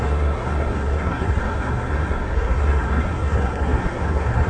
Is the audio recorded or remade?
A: remade